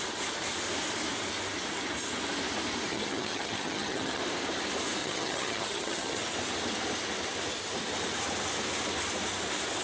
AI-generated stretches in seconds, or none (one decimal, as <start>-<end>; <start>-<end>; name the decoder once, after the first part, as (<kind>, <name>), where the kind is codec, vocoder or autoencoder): 2.9-4.2 (vocoder, HiFi-GAN); 5.0-6.2